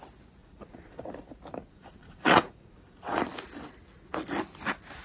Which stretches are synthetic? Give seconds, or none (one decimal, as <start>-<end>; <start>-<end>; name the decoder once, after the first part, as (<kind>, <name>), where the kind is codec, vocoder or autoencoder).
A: 0.4-1.1 (vocoder, Vocos); 1.6-3.2

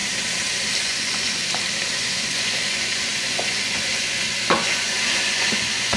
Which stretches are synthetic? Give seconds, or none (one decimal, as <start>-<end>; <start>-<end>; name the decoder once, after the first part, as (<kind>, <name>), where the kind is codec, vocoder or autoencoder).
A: 0.8-1.4 (vocoder, Vocos); 1.9-6.0

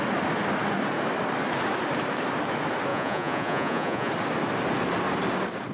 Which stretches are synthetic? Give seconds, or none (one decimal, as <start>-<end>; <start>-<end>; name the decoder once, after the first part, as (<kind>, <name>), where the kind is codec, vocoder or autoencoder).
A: 2.9-4.1 (vocoder, Vocos)

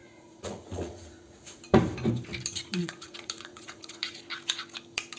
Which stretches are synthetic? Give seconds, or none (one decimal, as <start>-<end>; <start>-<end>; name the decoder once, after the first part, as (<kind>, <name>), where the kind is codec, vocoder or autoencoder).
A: 0.0-1.6 (vocoder, Vocos); 2.8-4.2

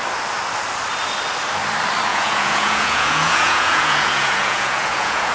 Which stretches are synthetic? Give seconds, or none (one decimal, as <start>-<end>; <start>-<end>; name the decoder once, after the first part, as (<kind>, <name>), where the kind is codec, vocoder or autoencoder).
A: 2.1-5.3 (vocoder, Vocos)

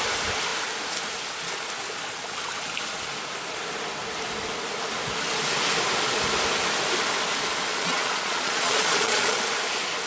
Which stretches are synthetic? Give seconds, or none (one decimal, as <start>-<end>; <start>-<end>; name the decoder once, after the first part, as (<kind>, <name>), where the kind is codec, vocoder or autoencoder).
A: 7.7-9.4 (vocoder, Vocos)

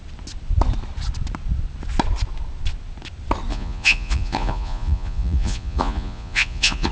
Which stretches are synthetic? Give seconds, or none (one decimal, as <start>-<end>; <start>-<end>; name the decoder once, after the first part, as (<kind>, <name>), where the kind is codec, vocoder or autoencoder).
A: 3.5-6.9 (vocoder, Vocos)

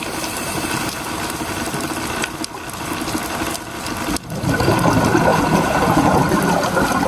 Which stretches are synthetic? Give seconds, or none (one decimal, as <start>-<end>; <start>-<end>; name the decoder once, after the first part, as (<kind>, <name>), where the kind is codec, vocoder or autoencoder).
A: 5.3-6.2 (vocoder, Vocos)